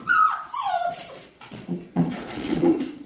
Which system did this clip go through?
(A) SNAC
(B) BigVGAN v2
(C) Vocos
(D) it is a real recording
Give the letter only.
C